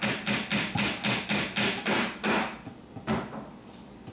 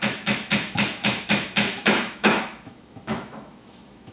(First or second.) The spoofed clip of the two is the second